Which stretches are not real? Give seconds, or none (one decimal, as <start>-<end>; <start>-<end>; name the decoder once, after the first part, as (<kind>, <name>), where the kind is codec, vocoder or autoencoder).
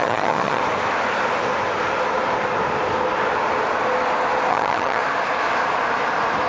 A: 0.0-0.6 (vocoder, HiFi-GAN); 4.5-5.0